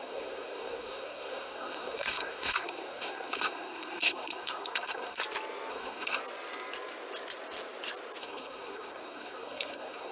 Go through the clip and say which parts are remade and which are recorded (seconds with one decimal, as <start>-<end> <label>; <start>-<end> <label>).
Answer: 0.0-5.2 remade; 5.2-5.7 recorded; 5.7-6.2 remade; 6.2-8.2 recorded; 8.2-10.1 remade